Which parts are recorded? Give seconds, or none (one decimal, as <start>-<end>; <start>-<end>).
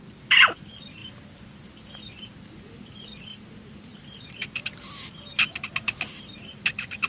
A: 0.0-1.0; 2.9-3.3; 5.1-5.7